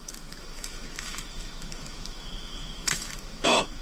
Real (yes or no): no